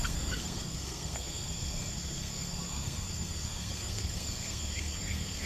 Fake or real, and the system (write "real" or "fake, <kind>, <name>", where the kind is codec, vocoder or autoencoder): fake, codec, SNAC